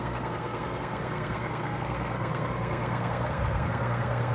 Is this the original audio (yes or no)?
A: no